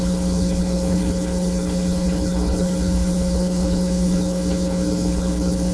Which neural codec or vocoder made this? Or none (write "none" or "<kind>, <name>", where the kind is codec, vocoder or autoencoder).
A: codec, HILCodec